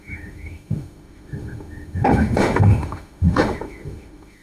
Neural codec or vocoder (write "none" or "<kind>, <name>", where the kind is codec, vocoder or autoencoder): autoencoder, DAC-VAE